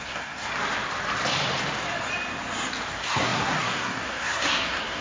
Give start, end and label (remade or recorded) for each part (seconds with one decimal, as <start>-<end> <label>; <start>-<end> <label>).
0.0-0.5 remade; 0.5-2.9 recorded; 2.9-5.0 remade